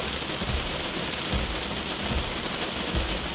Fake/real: real